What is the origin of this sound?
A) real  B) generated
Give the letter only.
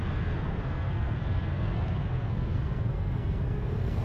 B